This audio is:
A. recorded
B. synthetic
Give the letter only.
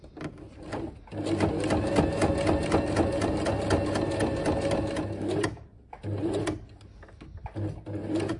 A